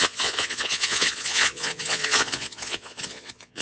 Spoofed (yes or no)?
yes